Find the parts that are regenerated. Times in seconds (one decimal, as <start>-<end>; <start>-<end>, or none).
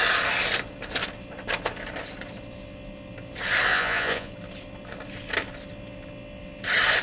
3.7-4.3